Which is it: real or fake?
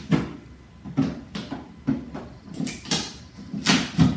real